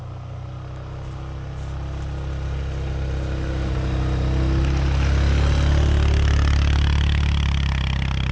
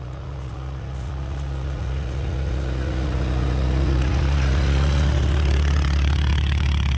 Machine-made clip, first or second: second